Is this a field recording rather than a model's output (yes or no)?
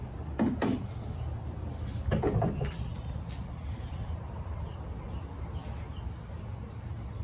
yes